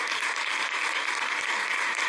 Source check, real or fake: real